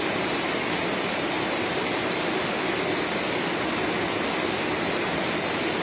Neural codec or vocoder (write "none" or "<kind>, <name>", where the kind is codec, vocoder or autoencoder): none